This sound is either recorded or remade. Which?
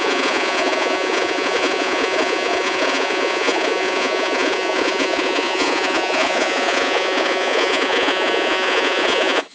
remade